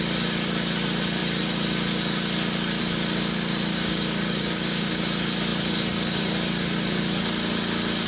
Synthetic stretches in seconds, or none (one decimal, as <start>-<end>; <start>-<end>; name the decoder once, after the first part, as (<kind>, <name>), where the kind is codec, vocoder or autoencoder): 3.7-5.0 (codec, DAC)